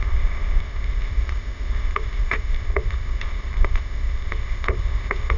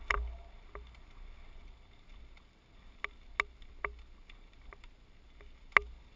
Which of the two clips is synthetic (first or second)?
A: first